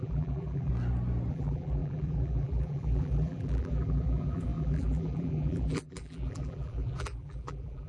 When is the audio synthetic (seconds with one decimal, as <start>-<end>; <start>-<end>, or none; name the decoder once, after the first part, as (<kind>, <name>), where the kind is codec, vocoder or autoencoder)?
0.0-0.7 (vocoder, BigVGAN v2); 1.3-7.9